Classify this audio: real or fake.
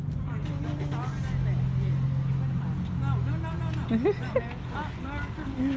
real